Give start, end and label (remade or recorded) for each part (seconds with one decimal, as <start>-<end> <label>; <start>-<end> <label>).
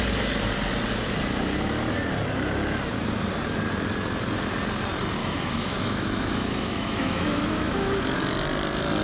0.0-5.2 recorded; 5.2-8.0 remade; 8.0-9.0 recorded